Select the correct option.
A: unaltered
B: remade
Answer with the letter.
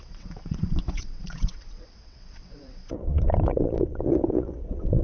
B